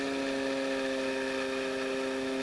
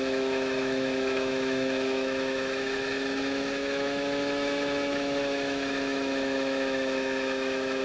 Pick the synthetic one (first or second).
second